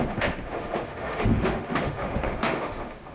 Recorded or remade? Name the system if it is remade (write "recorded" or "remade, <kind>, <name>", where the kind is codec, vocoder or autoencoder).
remade, autoencoder, DAC-VAE